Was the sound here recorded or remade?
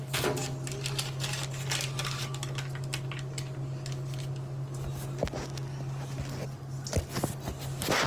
recorded